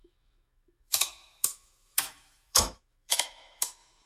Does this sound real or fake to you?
fake